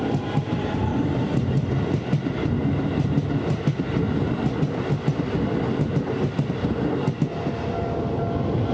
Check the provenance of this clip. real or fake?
real